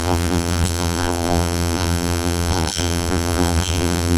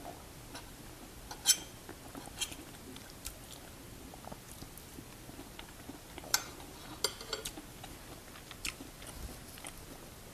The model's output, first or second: first